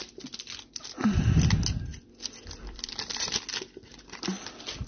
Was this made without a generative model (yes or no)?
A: yes